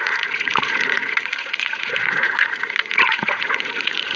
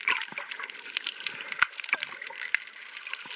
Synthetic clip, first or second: first